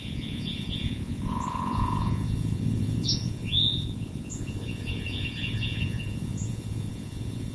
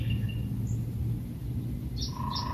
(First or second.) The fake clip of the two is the first